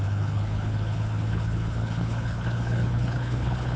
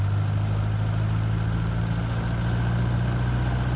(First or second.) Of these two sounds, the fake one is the first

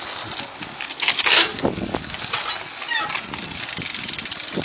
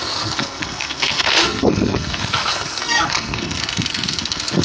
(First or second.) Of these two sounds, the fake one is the second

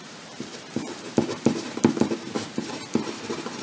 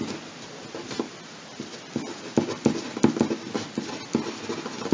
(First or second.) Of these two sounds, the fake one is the first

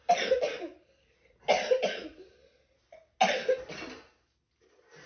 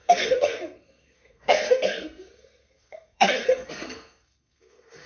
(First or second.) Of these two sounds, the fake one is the second